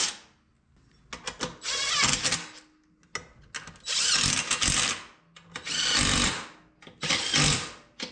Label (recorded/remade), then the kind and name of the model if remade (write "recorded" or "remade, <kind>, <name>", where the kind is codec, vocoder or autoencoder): recorded